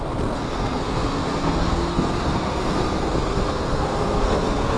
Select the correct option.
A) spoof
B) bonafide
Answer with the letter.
A